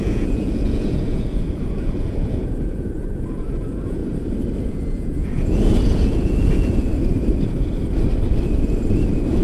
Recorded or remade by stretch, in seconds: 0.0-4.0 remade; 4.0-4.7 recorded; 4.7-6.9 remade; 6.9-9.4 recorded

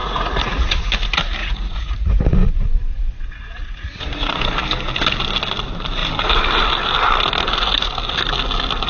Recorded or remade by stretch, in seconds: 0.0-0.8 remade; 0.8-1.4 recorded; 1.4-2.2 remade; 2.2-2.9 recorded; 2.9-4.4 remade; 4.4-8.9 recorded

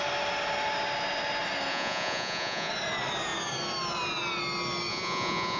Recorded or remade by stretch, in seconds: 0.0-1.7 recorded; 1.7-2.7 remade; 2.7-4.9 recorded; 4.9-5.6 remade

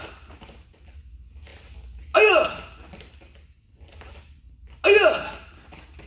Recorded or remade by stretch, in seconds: 0.0-6.1 recorded